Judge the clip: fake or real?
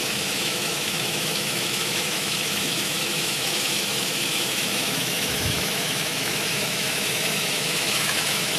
fake